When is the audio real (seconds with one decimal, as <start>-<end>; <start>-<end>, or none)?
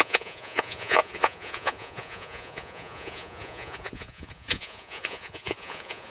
none